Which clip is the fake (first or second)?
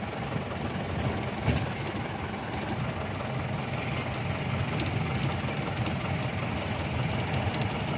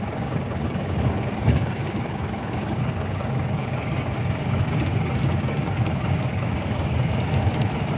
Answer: second